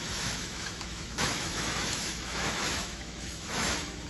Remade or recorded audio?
remade